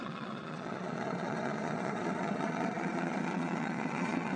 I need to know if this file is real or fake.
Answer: fake